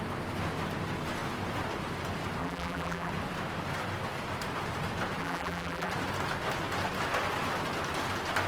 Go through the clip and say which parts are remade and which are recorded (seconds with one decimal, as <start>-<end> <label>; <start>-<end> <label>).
0.0-2.4 recorded; 2.4-3.1 remade; 3.1-5.2 recorded; 5.2-5.9 remade; 5.9-8.5 recorded